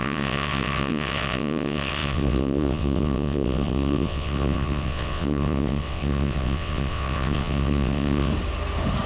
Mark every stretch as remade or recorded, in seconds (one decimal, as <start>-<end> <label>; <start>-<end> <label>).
0.0-8.3 remade; 8.3-9.1 recorded